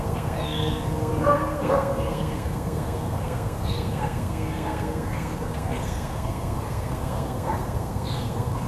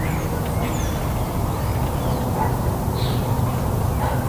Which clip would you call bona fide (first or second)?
second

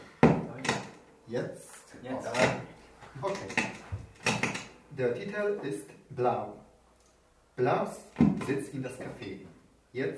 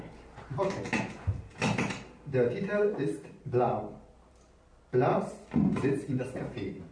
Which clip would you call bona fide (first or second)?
first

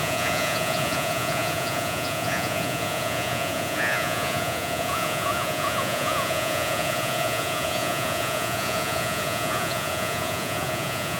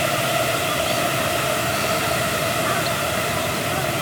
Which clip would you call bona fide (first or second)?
second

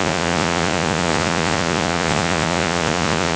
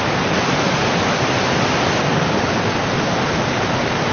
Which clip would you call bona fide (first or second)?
second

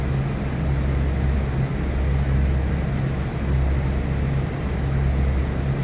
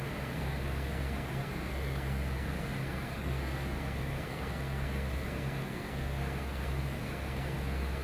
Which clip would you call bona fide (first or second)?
first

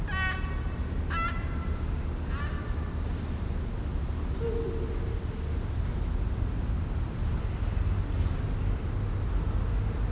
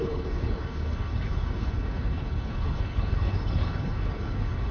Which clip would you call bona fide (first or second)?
first